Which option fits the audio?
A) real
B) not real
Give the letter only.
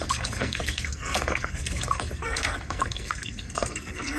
B